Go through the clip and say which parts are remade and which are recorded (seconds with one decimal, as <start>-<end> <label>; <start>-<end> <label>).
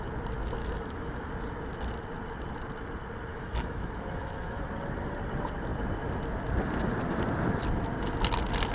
0.0-0.6 recorded; 0.6-1.3 remade; 1.3-3.3 recorded; 3.3-4.6 remade; 4.6-8.7 recorded